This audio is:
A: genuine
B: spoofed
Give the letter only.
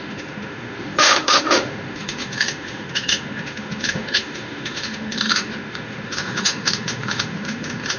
B